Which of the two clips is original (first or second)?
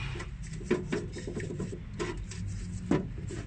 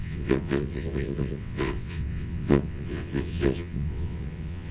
first